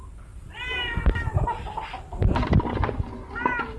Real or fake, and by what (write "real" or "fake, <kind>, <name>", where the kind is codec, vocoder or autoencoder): real